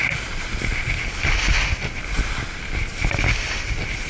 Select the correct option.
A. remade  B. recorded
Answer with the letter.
B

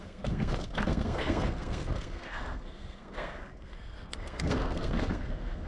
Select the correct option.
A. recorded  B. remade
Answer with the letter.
B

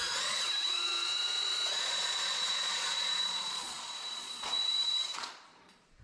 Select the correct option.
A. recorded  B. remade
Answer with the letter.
B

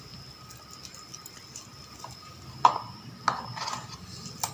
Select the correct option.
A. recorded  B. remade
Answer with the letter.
A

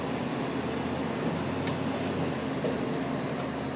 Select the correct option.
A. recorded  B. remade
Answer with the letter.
A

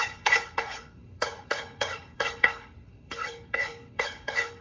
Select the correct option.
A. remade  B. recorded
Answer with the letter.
A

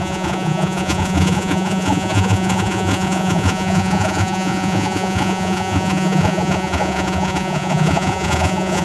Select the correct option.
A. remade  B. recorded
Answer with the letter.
A